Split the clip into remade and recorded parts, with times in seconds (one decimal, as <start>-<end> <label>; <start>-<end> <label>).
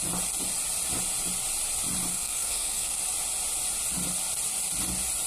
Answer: 0.0-2.1 recorded; 2.1-3.0 remade; 3.0-5.3 recorded